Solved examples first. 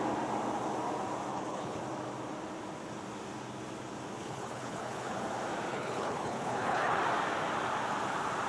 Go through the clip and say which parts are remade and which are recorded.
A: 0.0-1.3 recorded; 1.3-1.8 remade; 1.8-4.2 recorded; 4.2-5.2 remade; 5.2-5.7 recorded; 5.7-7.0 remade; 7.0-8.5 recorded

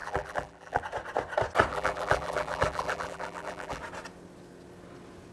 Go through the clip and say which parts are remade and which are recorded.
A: 0.0-0.8 remade; 0.8-1.7 recorded; 1.7-3.8 remade; 3.8-5.3 recorded

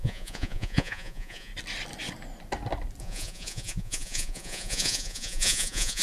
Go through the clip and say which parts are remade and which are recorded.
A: 0.0-1.5 remade; 1.5-3.0 recorded; 3.0-6.0 remade

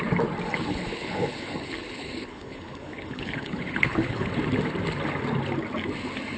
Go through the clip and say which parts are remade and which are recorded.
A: 0.0-0.5 recorded; 0.5-4.3 remade; 4.3-6.4 recorded